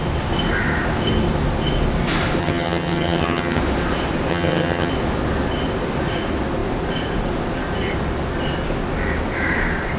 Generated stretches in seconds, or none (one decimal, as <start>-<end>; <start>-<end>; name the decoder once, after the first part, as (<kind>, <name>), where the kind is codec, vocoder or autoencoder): 2.4-3.6 (vocoder, HiFi-GAN); 4.3-4.9